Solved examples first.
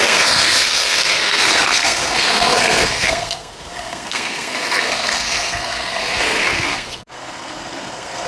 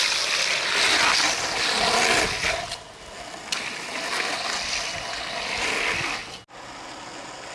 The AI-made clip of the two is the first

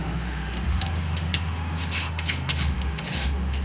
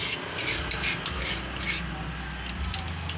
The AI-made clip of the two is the first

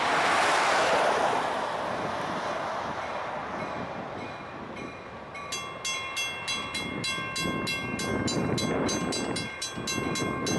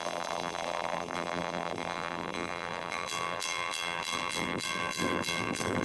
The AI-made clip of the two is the second